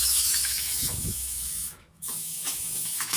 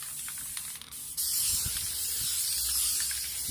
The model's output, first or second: first